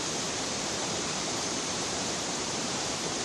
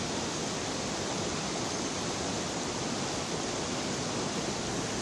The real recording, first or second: second